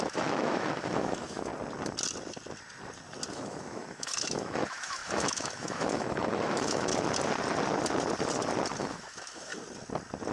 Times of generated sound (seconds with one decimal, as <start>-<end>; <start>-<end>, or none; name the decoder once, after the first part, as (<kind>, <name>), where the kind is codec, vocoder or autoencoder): 0.0-1.5 (autoencoder, DAC-VAE); 3.3-6.9; 8.8-9.5